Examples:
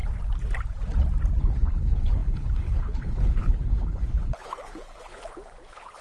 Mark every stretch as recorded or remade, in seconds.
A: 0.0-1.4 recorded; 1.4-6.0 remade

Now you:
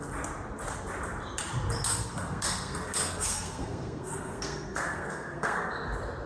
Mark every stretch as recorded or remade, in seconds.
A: 0.0-1.9 recorded; 1.9-5.7 remade; 5.7-6.3 recorded

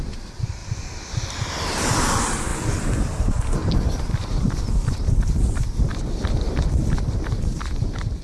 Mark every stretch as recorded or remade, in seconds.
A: 0.0-0.6 remade; 0.6-1.1 recorded; 1.1-2.5 remade; 2.5-3.2 recorded; 3.2-8.2 remade

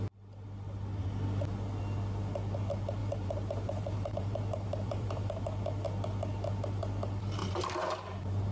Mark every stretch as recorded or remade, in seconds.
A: 0.0-3.0 recorded; 3.0-5.4 remade; 5.4-7.4 recorded; 7.4-8.5 remade

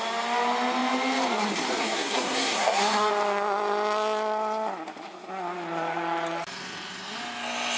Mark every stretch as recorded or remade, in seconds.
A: 0.0-1.8 recorded; 1.8-3.1 remade; 3.1-7.8 recorded